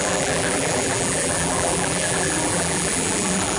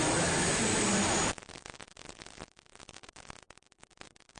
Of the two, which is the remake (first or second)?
first